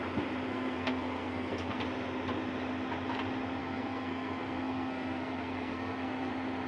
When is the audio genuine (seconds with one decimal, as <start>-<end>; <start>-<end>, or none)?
0.0-0.5; 1.8-3.6; 6.3-6.7